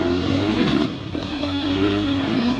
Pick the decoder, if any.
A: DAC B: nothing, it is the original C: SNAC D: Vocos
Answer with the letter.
C